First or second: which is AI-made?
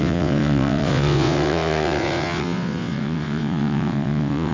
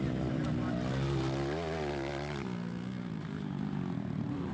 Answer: first